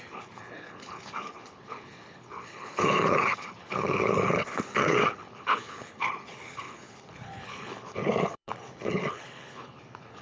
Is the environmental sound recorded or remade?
remade